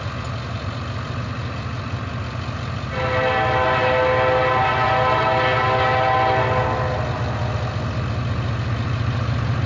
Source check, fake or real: real